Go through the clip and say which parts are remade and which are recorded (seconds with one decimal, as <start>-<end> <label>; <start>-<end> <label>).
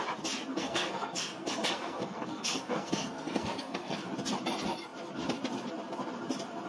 0.0-0.5 recorded; 0.5-4.1 remade; 4.1-6.7 recorded